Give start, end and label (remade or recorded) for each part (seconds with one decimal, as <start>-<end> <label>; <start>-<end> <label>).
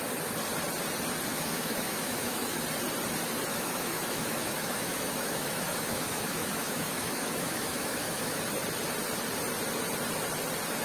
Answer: 0.0-1.3 recorded; 1.3-2.6 remade; 2.6-3.5 recorded; 3.5-8.4 remade; 8.4-10.8 recorded